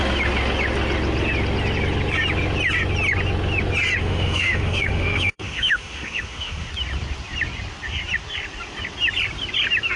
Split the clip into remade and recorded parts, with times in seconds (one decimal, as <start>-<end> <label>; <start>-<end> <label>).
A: 0.0-4.0 recorded; 4.0-6.7 remade; 6.7-10.0 recorded